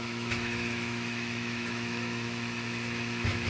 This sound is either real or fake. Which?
fake